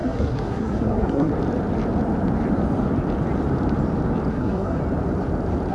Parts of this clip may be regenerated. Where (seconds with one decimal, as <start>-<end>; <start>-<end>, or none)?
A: 0.0-1.3; 4.3-4.8